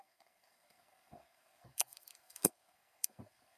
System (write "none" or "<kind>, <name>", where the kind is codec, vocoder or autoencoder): codec, SNAC